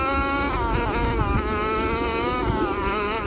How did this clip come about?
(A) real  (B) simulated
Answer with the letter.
A